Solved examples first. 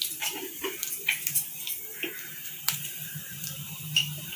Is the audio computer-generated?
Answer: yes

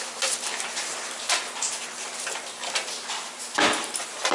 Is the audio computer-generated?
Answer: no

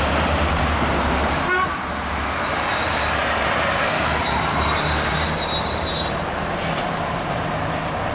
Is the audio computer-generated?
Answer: yes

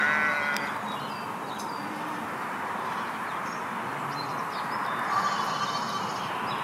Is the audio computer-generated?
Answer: no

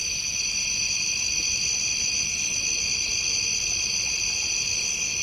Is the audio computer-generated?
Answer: no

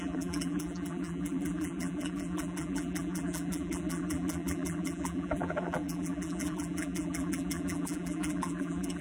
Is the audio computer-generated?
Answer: yes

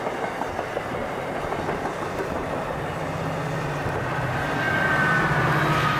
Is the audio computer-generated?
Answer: no